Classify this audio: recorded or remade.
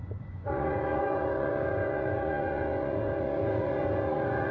remade